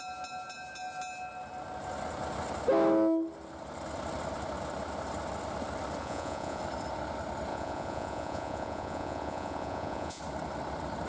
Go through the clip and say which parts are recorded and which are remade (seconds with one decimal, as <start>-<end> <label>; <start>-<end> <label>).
0.0-6.0 recorded; 6.0-6.6 remade; 6.6-7.5 recorded; 7.5-10.2 remade; 10.2-11.1 recorded

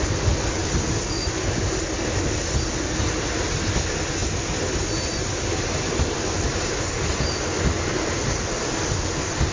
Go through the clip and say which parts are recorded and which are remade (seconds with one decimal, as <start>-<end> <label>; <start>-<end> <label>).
0.0-9.5 recorded

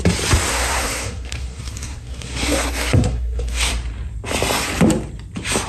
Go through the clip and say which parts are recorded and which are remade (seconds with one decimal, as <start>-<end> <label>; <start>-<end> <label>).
0.0-0.5 recorded; 0.5-3.7 remade; 3.7-5.7 recorded

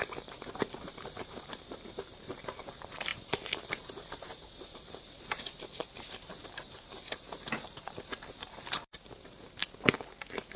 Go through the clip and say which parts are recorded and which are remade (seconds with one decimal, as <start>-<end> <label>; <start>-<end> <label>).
0.0-9.6 remade; 9.6-10.6 recorded

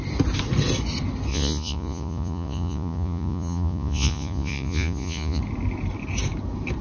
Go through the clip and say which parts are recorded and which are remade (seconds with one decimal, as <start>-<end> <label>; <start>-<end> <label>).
0.0-1.3 recorded; 1.3-5.4 remade; 5.4-6.8 recorded

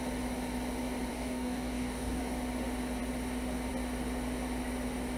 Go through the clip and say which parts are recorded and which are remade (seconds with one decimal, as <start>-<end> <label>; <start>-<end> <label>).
0.0-1.1 recorded; 1.1-2.2 remade; 2.2-5.2 recorded